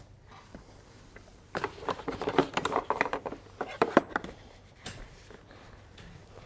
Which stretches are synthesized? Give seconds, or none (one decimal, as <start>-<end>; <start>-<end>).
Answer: 1.3-5.2